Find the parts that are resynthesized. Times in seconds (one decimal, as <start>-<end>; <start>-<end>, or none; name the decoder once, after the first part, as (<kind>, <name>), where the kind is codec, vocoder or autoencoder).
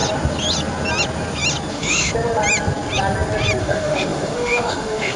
1.7-2.1 (autoencoder, DAC-VAE); 3.6-5.2